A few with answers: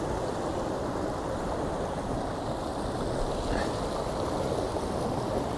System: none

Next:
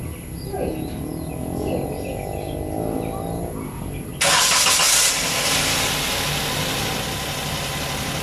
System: none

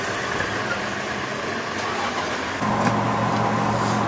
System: none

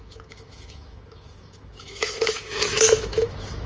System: autoencoder, DAC-VAE